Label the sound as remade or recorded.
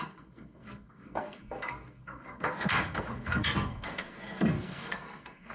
remade